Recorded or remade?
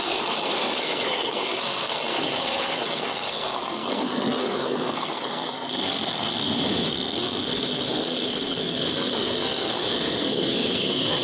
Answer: remade